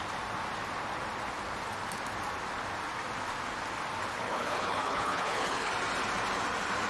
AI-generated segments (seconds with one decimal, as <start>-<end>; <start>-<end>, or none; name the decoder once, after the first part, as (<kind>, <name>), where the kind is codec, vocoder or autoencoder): 4.1-5.7 (codec, HILCodec)